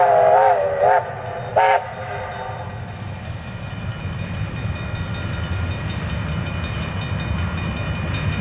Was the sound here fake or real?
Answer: real